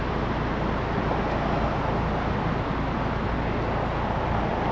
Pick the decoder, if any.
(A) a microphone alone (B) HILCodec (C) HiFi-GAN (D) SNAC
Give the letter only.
A